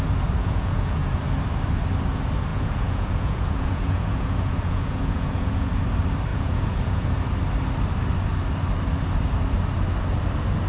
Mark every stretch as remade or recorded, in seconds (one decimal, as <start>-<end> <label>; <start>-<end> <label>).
0.0-0.4 recorded; 0.4-1.2 remade; 1.2-2.5 recorded; 2.5-5.7 remade; 5.7-6.3 recorded; 6.3-7.1 remade; 7.1-10.7 recorded